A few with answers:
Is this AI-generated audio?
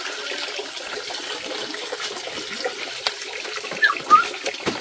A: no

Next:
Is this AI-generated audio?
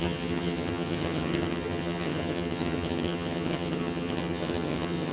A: yes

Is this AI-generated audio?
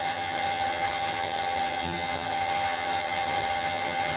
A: yes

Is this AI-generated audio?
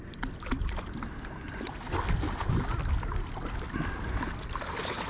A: no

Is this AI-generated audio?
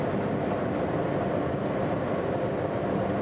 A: no